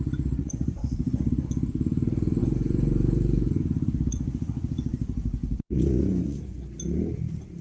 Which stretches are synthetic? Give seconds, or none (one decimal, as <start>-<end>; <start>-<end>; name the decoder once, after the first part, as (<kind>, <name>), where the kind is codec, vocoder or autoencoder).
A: 0.4-1.3 (vocoder, Vocos); 2.4-3.6; 5.4-6.6